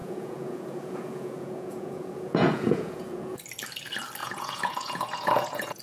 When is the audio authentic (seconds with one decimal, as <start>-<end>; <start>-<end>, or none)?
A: 3.4-4.2